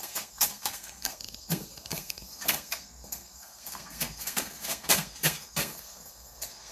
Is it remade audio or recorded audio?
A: remade